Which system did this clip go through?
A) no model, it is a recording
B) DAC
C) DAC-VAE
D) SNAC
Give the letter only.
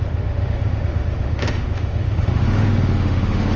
C